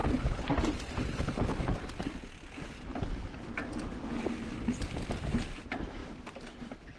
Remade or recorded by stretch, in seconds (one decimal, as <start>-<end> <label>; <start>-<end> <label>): 0.0-2.9 remade; 2.9-4.3 recorded; 4.3-7.0 remade